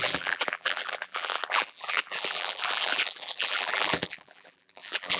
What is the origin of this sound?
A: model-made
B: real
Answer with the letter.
A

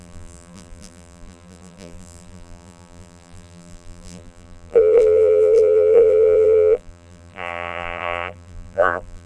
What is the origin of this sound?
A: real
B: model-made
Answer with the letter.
B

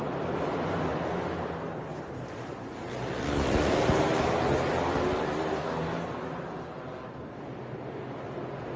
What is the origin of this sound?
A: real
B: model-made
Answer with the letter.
A